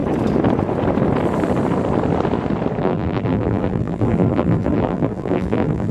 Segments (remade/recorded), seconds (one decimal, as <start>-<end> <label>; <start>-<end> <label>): 0.0-2.8 recorded; 2.8-5.9 remade